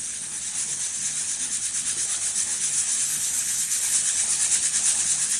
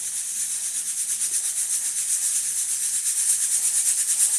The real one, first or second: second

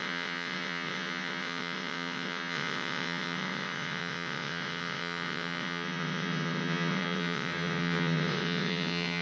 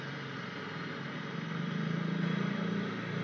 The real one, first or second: second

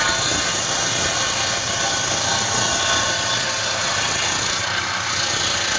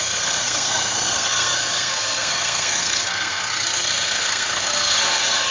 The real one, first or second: first